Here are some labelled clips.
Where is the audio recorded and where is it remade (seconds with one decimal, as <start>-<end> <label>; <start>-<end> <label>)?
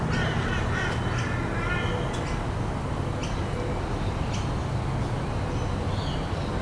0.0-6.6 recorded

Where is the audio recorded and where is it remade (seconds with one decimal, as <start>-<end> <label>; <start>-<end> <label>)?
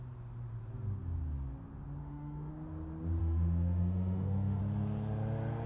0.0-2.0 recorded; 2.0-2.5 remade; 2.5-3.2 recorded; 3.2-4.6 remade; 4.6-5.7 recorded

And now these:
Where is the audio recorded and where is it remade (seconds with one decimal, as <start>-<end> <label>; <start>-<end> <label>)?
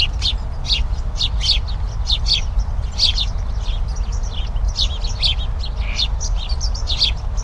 0.0-7.4 recorded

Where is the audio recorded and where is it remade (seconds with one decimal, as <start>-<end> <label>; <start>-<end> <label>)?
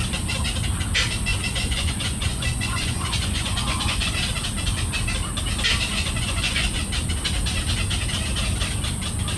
0.0-1.3 recorded; 1.3-4.0 remade; 4.0-5.9 recorded; 5.9-6.8 remade; 6.8-9.4 recorded